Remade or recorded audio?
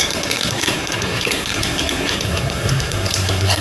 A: remade